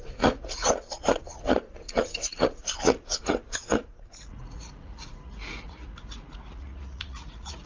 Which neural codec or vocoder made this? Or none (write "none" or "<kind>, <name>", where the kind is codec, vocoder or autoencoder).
vocoder, Vocos